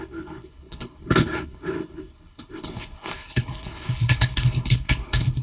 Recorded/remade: remade